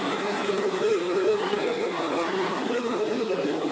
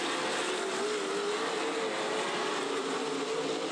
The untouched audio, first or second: second